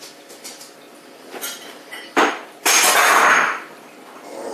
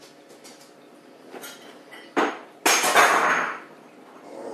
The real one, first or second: second